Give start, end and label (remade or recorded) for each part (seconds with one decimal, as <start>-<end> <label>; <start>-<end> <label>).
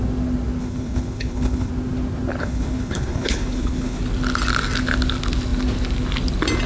0.0-0.6 recorded; 0.6-1.7 remade; 1.7-2.4 recorded; 2.4-4.0 remade; 4.0-6.7 recorded